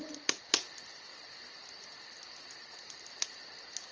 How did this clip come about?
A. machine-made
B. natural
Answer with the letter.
B